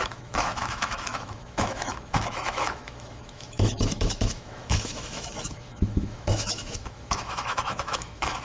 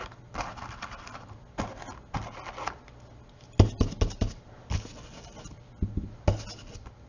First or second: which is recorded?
second